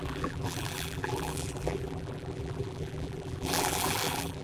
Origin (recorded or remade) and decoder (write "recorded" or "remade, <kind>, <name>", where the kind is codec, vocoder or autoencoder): remade, vocoder, BigVGAN v2